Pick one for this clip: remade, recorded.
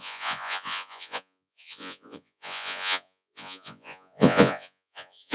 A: remade